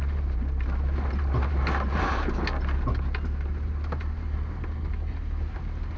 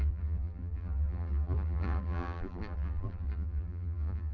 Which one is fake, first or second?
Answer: second